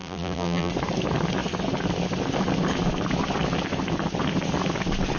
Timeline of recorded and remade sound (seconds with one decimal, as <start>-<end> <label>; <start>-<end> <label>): 0.0-0.7 remade; 0.7-5.2 recorded

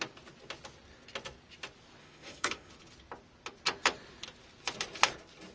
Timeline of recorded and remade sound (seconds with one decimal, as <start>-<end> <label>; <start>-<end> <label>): 0.0-2.0 recorded; 2.0-2.7 remade; 2.7-5.5 recorded

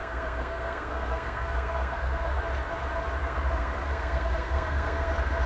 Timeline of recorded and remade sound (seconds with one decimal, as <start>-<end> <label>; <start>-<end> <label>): 0.0-2.4 remade; 2.4-3.2 recorded; 3.2-5.1 remade; 5.1-5.5 recorded

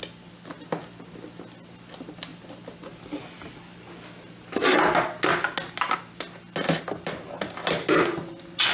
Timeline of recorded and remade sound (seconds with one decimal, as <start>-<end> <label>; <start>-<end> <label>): 0.0-8.7 recorded

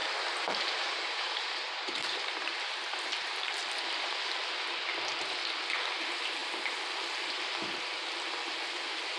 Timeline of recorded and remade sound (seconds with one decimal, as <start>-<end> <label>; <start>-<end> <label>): 0.0-4.1 remade; 4.1-9.2 recorded

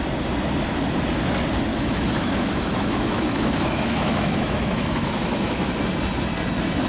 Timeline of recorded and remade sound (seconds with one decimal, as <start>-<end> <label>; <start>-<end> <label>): 0.0-1.7 recorded; 1.7-5.8 remade; 5.8-6.9 recorded

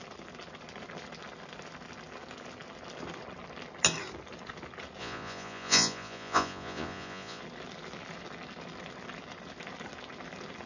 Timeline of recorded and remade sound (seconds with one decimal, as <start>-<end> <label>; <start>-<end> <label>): 0.0-5.0 recorded; 5.0-7.4 remade; 7.4-10.7 recorded